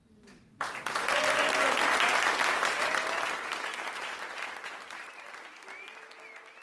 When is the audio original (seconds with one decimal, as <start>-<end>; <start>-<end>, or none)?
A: 0.0-6.6